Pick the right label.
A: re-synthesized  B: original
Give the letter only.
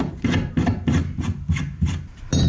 B